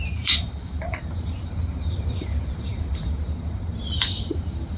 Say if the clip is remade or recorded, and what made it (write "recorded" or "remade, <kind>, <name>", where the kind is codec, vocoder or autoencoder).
remade, vocoder, BigVGAN v2